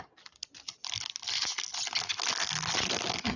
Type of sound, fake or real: real